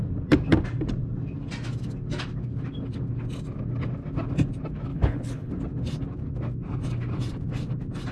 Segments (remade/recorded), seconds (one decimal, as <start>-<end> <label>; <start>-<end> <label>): 0.0-4.9 recorded; 4.9-5.5 remade; 5.5-8.1 recorded